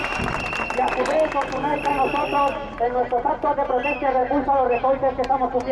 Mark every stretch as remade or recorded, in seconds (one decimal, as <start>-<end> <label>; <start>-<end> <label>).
0.0-5.7 recorded